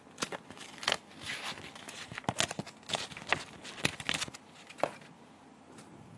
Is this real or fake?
real